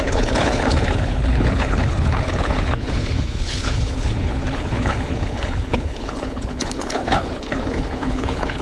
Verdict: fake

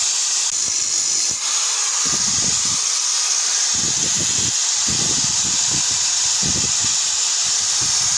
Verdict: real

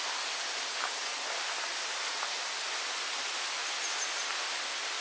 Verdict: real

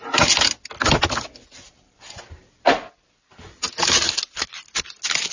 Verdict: real